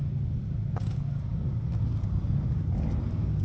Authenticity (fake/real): real